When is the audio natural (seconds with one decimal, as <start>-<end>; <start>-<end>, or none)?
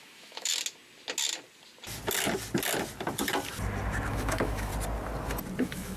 0.5-4.1; 4.7-5.6